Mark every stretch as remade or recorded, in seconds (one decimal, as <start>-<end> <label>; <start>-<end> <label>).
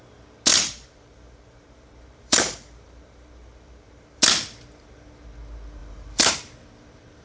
0.0-0.5 recorded; 0.5-4.2 remade; 4.2-5.8 recorded; 5.8-6.3 remade; 6.3-7.2 recorded